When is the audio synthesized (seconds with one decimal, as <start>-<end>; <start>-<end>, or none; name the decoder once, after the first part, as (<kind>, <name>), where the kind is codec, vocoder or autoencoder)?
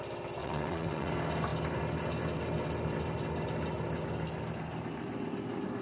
0.4-1.1 (vocoder, WaveNeXt)